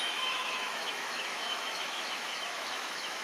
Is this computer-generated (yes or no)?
yes